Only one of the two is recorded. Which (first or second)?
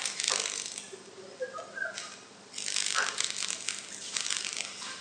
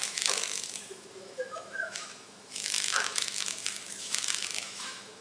first